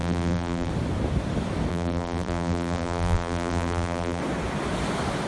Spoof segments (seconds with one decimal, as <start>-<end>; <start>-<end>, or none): 0.0-0.7; 1.7-4.2